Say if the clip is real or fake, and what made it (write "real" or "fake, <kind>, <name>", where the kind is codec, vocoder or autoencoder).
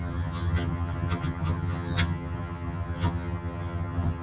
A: fake, vocoder, HiFi-GAN